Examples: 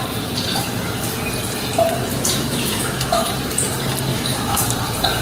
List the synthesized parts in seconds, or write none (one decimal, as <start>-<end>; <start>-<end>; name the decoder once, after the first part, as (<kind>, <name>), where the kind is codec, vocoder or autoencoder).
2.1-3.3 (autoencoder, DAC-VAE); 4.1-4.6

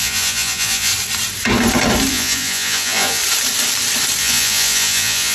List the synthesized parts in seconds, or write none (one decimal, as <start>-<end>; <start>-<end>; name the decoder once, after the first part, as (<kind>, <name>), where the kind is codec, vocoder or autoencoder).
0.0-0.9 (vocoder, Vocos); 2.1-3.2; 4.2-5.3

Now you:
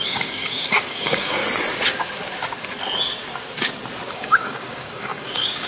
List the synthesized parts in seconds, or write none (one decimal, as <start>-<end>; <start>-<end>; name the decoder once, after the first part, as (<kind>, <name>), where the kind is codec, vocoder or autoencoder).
0.0-1.4 (codec, DAC); 4.1-5.7

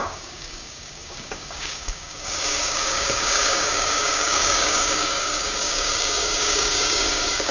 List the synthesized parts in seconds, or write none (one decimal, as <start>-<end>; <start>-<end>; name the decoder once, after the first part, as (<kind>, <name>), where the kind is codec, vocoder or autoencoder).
0.0-7.5 (codec, DAC)

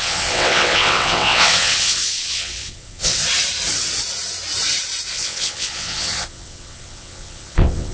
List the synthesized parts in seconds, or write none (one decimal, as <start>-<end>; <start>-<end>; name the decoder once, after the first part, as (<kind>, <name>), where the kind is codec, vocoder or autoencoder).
0.0-3.2 (vocoder, WaveNeXt); 5.1-7.9

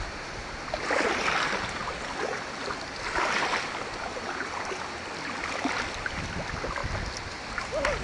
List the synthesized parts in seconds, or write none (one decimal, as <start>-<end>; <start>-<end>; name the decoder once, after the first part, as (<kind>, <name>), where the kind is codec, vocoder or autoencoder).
none